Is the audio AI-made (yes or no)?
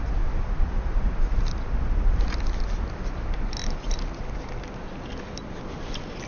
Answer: no